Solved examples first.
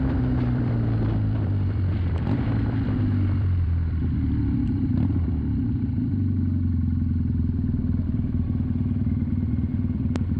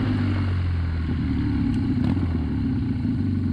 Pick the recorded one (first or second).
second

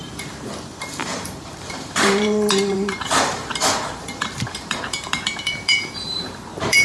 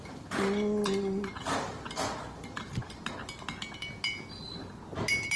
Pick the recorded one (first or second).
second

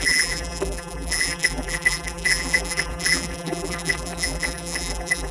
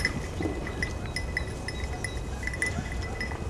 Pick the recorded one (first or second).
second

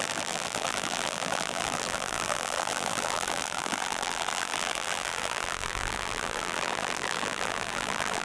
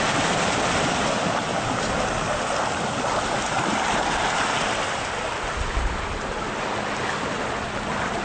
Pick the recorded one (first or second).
second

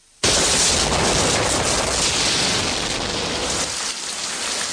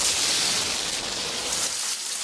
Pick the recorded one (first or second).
first